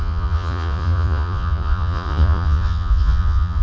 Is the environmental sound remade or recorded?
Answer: remade